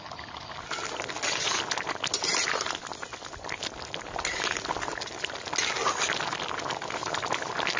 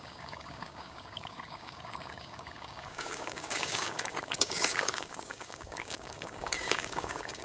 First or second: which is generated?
second